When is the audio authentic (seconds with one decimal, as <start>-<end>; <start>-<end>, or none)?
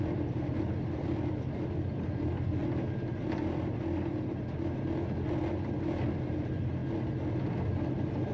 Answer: 2.6-5.8; 6.8-7.6